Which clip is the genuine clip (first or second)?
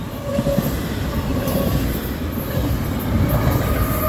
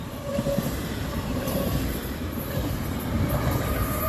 first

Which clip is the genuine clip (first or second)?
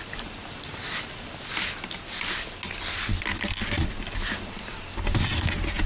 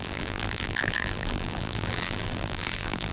first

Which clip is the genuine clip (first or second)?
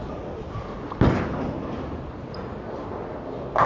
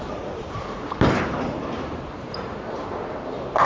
first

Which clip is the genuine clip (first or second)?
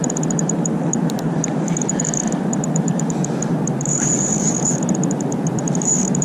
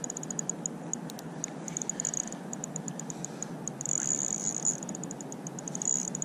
second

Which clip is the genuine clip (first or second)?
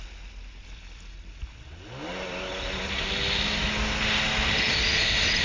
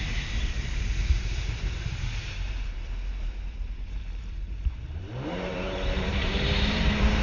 first